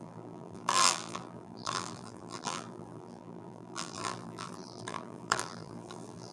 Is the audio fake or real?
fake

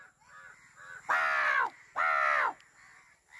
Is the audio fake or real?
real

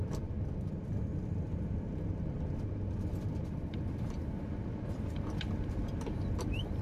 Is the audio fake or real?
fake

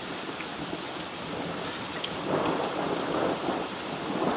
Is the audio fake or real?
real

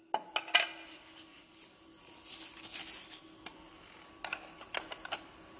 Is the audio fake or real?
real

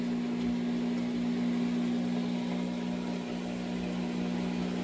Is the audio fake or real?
real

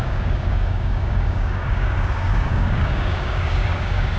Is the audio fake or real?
fake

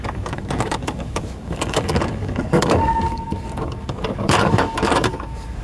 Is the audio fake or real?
fake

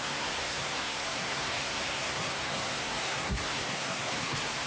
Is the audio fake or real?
fake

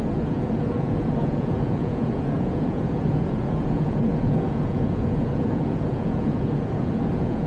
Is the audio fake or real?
fake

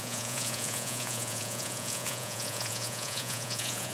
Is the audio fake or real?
fake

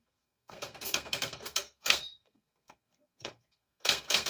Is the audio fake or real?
fake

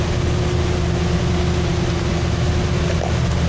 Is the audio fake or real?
real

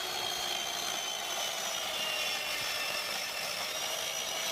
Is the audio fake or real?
real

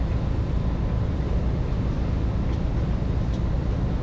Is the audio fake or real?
real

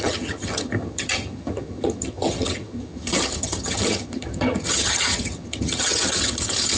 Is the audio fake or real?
fake